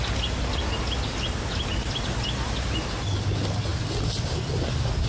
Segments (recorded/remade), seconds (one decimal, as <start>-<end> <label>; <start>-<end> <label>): 0.0-5.1 recorded